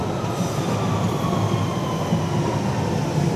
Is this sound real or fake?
real